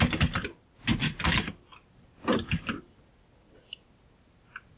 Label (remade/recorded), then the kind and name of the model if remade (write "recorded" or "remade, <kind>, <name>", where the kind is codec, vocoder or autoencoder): recorded